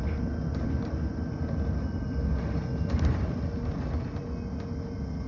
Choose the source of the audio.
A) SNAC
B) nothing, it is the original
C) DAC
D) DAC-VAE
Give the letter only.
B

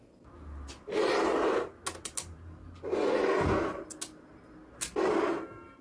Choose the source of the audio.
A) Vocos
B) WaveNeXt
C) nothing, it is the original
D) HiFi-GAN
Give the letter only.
C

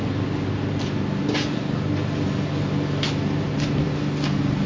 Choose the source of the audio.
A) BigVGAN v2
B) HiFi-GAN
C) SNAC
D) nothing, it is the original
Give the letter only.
D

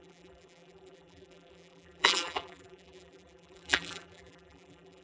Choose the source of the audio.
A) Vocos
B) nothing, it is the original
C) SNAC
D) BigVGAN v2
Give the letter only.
D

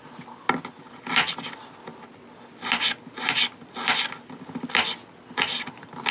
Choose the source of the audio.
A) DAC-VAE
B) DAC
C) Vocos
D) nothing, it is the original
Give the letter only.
D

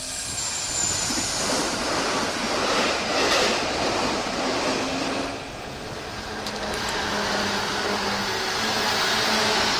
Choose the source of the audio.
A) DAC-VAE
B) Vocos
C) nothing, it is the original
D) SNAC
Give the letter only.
C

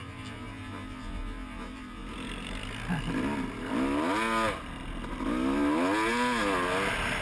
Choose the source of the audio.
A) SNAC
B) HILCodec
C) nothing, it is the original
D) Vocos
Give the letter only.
C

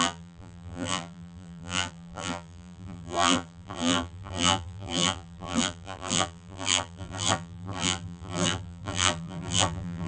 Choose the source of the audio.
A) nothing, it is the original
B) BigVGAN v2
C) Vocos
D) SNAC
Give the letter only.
B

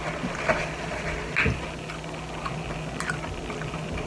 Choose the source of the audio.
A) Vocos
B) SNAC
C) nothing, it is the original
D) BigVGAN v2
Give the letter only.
C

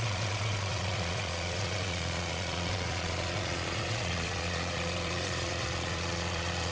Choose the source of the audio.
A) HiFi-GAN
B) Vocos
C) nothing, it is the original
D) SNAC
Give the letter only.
B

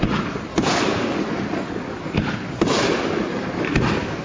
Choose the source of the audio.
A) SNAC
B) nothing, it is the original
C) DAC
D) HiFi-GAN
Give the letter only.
B